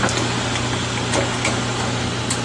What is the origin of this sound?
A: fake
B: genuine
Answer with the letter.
B